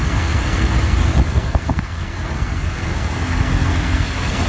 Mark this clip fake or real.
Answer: fake